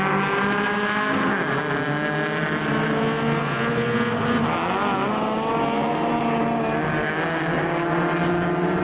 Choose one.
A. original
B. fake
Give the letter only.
A